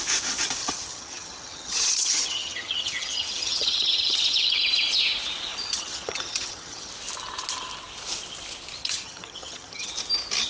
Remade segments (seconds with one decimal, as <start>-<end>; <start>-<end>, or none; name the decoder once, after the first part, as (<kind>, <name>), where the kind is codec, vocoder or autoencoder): 0.6-4.6 (vocoder, HiFi-GAN); 5.5-6.9; 8.8-9.9